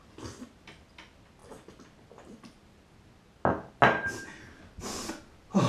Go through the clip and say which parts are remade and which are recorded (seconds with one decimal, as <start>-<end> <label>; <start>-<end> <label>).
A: 0.0-5.7 recorded